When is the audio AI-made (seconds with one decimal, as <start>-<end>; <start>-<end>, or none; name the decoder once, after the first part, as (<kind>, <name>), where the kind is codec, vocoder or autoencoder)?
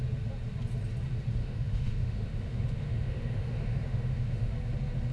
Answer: 1.4-4.5 (autoencoder, DAC-VAE)